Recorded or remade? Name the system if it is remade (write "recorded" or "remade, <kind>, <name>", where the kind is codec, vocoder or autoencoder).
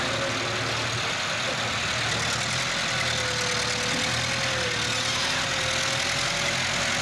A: recorded